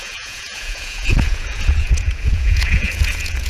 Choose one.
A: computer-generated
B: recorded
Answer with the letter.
A